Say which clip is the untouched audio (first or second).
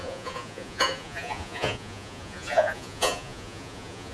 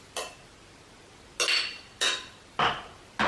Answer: second